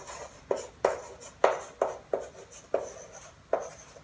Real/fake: real